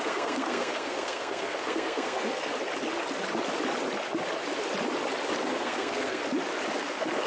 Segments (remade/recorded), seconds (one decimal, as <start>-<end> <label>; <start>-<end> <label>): 0.0-2.5 remade; 2.5-5.4 recorded; 5.4-6.2 remade; 6.2-6.8 recorded; 6.8-7.3 remade

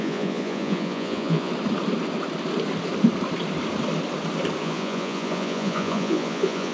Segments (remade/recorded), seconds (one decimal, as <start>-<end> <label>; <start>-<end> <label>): 0.0-1.5 remade; 1.5-4.6 recorded; 4.6-6.7 remade

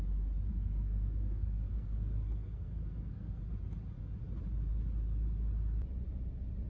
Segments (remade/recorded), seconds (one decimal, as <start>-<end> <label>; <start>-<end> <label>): 0.0-0.5 recorded; 0.5-3.4 remade; 3.4-6.7 recorded

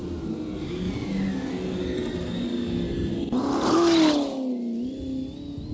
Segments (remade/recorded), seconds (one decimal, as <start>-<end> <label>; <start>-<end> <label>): 0.0-5.7 recorded